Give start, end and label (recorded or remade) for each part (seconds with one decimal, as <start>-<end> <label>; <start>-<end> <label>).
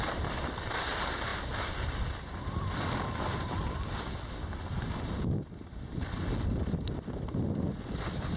0.0-1.3 remade; 1.3-2.2 recorded; 2.2-8.4 remade